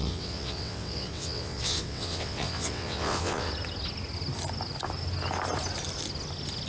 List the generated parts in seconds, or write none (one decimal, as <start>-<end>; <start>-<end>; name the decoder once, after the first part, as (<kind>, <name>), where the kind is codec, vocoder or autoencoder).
0.0-3.5 (vocoder, WaveNeXt)